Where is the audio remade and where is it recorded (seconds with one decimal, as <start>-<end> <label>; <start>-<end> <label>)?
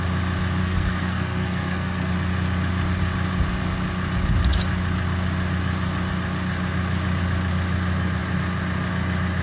0.0-0.6 recorded; 0.6-2.1 remade; 2.1-9.4 recorded